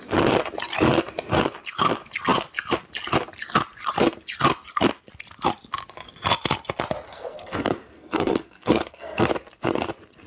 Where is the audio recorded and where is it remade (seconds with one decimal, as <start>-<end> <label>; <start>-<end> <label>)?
0.0-7.1 recorded; 7.1-9.3 remade; 9.3-10.3 recorded